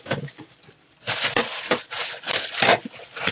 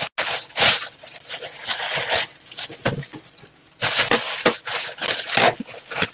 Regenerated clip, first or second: first